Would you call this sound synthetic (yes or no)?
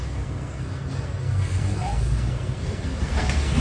yes